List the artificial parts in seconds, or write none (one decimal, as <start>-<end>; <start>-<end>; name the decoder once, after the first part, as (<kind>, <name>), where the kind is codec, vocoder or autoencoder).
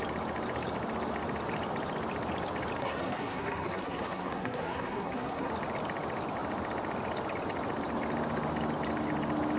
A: 2.8-5.5 (codec, SNAC)